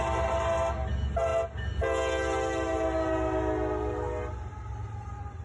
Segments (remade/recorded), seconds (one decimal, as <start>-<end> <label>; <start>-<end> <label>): 0.0-5.4 recorded